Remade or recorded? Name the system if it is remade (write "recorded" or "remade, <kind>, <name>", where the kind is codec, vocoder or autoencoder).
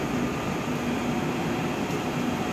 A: recorded